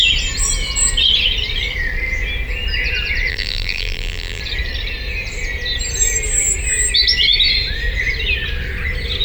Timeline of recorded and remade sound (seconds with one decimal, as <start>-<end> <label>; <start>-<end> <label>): 0.0-3.3 recorded; 3.3-4.4 remade; 4.4-9.2 recorded